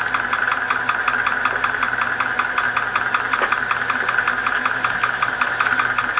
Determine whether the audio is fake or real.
real